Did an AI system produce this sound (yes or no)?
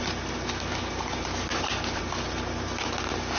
no